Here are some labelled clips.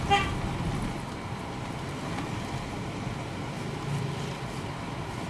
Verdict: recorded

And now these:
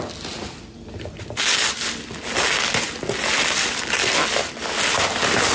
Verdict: recorded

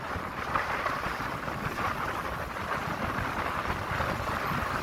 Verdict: recorded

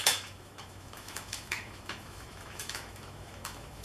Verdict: remade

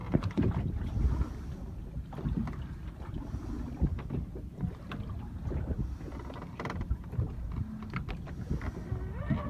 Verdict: recorded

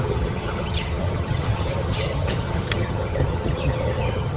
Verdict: remade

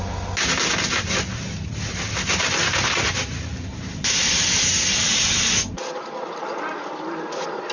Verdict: recorded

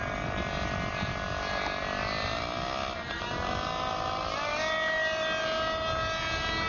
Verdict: recorded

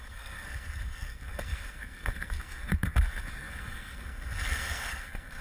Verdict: remade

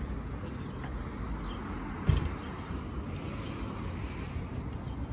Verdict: recorded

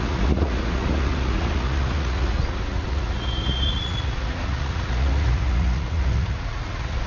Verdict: remade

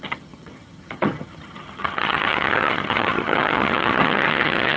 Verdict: remade